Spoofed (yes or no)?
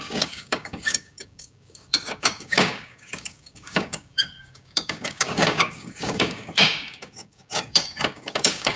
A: yes